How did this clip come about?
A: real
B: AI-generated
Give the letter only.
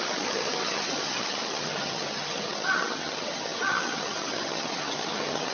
B